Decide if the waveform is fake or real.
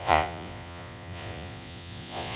fake